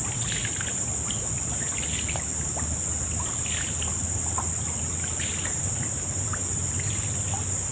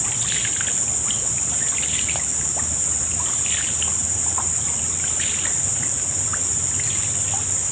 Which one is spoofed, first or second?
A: second